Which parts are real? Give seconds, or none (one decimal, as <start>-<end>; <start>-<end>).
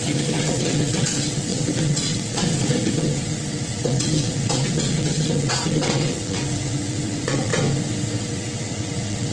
7.5-8.2